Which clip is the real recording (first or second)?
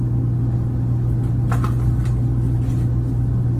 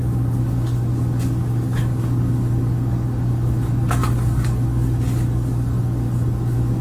first